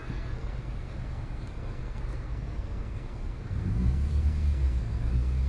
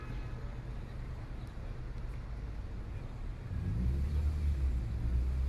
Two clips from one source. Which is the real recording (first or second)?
second